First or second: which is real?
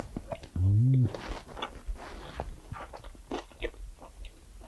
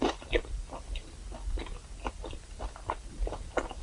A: first